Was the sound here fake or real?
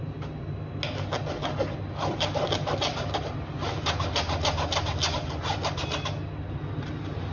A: real